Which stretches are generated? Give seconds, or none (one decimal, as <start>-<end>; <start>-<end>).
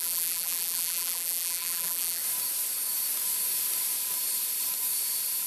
0.0-2.2